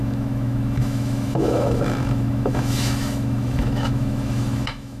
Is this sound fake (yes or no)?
yes